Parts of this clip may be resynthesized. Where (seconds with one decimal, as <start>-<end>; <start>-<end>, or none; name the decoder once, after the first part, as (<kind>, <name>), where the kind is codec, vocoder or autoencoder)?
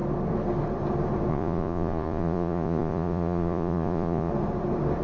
1.3-4.3 (vocoder, Vocos)